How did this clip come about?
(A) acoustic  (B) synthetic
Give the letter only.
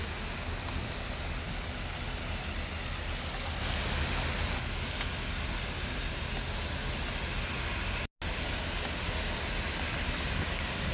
A